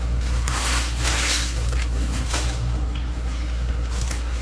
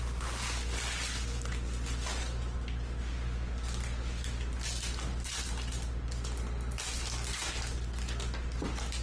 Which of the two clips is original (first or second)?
second